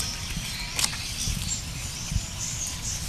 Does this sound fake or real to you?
real